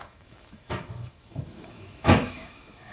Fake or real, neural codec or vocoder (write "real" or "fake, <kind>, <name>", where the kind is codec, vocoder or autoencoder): fake, autoencoder, DAC-VAE